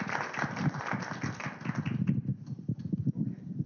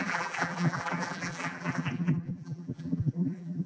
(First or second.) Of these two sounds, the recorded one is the first